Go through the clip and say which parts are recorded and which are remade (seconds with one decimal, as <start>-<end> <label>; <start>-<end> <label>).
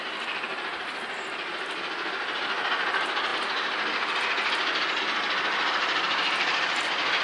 0.0-7.2 recorded